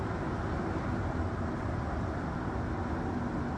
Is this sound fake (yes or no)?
no